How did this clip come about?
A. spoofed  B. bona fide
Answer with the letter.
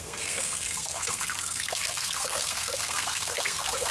A